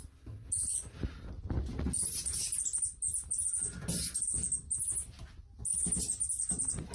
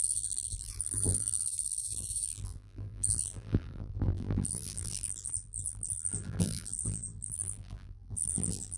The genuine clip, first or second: first